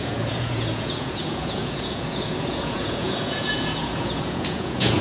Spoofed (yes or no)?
yes